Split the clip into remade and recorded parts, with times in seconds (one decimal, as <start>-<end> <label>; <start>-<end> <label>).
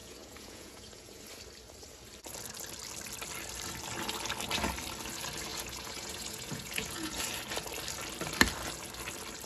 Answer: 0.0-1.2 remade; 1.2-5.5 recorded; 5.5-7.2 remade; 7.2-9.5 recorded